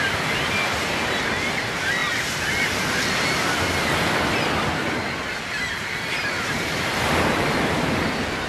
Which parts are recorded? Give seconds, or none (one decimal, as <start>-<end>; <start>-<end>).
0.0-8.5